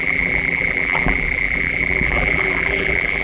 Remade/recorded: remade